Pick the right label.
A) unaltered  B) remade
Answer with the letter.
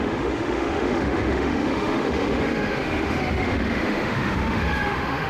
B